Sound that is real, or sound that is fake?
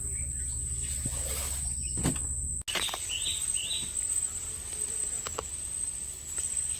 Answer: real